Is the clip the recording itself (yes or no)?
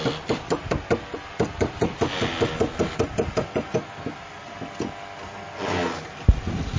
yes